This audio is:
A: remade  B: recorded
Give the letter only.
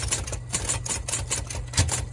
B